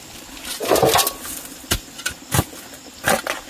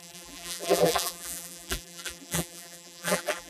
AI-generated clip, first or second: second